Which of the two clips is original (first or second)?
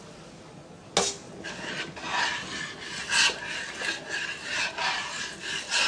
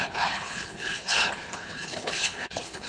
first